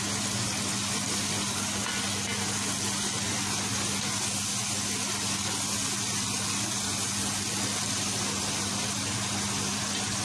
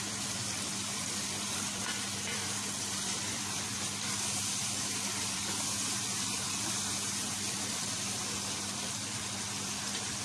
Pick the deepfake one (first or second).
second